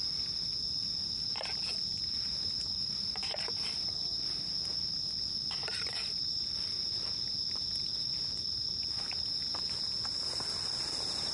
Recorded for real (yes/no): yes